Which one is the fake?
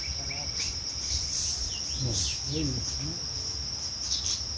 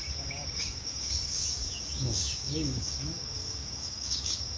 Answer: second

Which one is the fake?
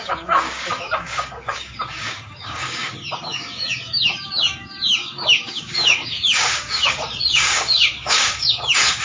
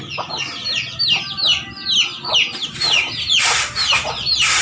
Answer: first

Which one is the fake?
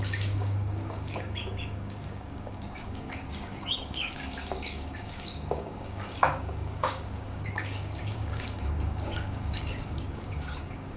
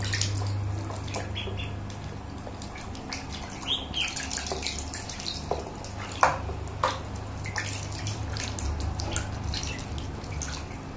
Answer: first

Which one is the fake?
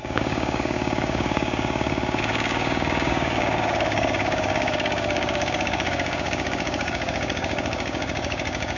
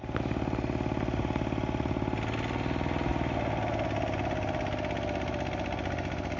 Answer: first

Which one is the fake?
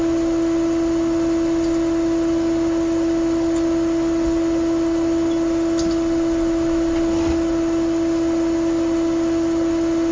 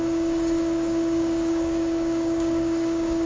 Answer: second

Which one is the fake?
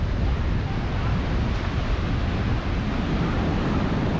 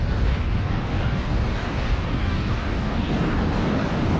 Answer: second